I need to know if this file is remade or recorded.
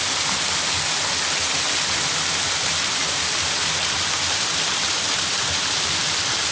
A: recorded